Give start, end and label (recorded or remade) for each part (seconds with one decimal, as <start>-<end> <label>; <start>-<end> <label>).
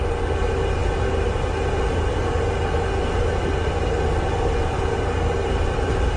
0.0-6.2 recorded